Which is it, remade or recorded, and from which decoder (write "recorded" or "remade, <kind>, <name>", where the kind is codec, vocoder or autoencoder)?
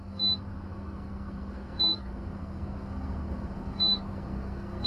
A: remade, codec, SNAC